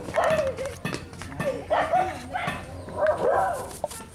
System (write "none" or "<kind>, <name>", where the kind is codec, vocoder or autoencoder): none